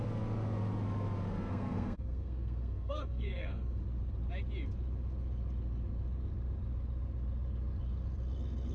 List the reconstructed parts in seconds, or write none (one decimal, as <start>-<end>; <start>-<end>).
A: 1.5-3.8